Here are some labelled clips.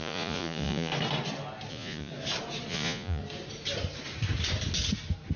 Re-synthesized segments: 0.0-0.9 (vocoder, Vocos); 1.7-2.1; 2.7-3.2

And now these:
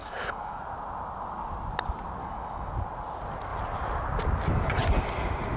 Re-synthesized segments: 0.0-0.6 (codec, DAC); 2.2-2.7

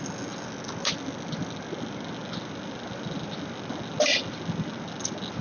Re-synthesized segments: none

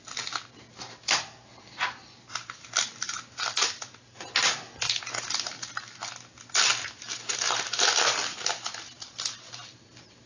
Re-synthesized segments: none

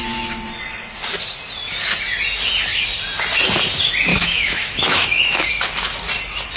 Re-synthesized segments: 4.1-5.5 (autoencoder, DAC-VAE)

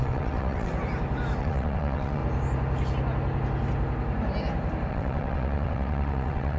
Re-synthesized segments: 0.0-0.7 (vocoder, WaveNeXt); 1.4-2.2; 4.9-6.6